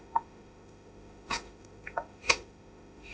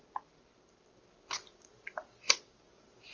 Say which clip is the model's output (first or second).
first